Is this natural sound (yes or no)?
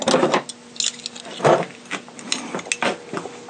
yes